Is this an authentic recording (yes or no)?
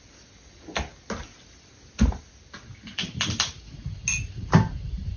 yes